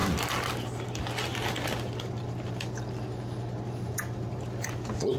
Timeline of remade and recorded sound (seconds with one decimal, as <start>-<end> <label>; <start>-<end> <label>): 0.0-5.2 recorded